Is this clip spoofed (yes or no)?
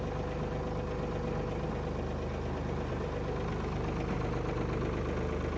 no